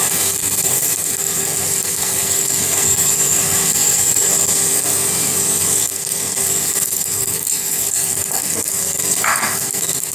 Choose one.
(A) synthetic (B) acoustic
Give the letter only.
A